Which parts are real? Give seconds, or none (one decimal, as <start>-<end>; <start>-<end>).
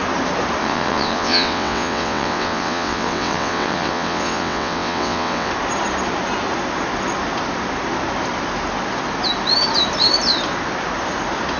0.0-0.6; 5.5-11.6